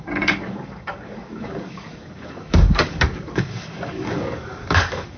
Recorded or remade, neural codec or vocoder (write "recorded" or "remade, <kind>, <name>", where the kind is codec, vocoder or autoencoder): remade, codec, DAC